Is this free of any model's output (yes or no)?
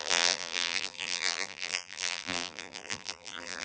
no